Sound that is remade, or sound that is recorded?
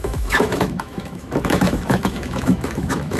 remade